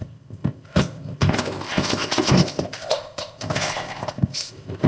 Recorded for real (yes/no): no